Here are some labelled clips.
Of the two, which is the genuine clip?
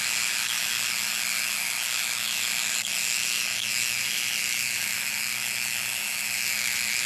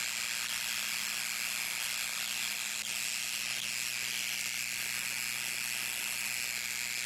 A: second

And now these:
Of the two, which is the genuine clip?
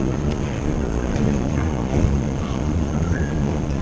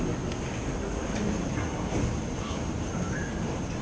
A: second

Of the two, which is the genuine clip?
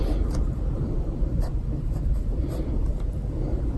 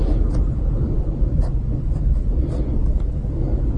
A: second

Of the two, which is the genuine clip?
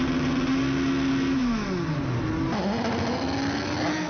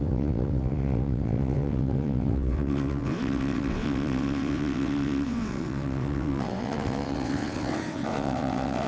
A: first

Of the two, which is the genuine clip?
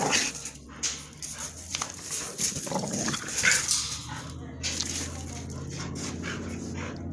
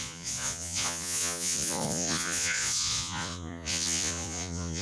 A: first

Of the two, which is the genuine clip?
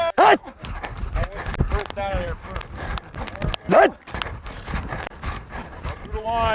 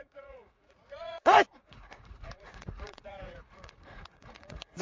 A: first